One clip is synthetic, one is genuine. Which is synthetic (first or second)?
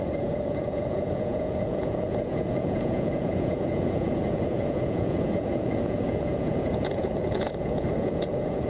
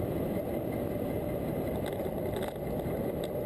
first